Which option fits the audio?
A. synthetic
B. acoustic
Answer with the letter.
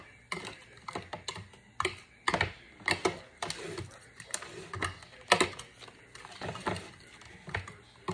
B